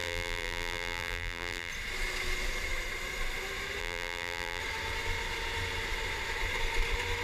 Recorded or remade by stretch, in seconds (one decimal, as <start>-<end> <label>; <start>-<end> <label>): 0.0-1.7 remade; 1.7-3.8 recorded; 3.8-4.6 remade; 4.6-7.2 recorded